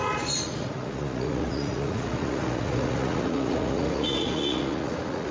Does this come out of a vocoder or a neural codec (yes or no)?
yes